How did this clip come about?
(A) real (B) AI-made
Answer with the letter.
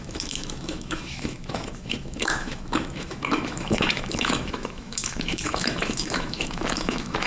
B